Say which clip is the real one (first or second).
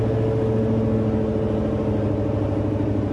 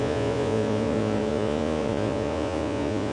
first